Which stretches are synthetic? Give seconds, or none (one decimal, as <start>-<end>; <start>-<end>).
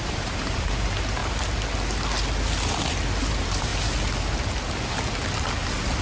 0.0-1.2; 3.3-3.7